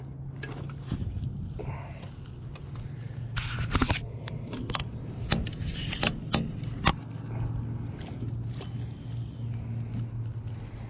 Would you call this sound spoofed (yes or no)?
no